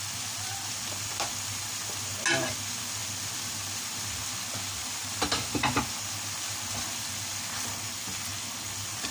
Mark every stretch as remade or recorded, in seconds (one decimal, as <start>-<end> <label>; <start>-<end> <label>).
0.0-9.1 recorded